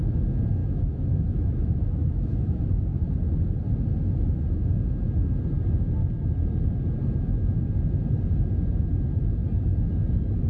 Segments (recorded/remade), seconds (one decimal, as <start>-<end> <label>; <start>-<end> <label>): 0.0-0.6 recorded; 0.6-3.0 remade; 3.0-10.5 recorded